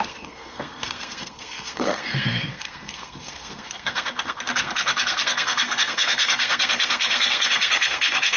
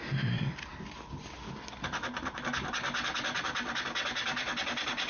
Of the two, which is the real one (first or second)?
second